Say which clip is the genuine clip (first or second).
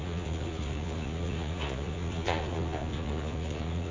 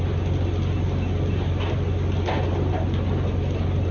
second